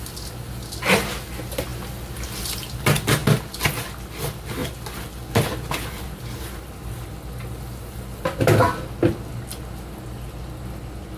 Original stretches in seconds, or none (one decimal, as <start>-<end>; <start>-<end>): 0.0-11.2